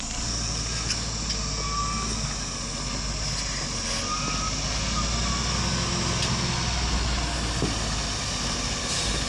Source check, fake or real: real